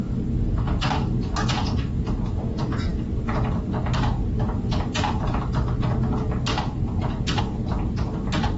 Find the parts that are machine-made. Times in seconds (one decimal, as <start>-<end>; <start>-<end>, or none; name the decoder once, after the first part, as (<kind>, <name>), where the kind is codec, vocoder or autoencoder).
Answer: none